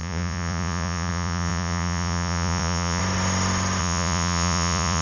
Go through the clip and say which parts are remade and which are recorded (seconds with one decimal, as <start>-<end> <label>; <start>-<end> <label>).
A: 0.0-3.0 remade; 3.0-3.8 recorded; 3.8-5.0 remade